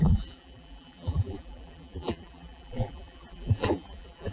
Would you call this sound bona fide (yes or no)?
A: no